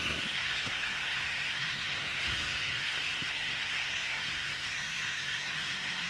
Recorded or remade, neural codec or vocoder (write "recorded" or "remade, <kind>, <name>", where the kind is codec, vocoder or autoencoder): remade, codec, SNAC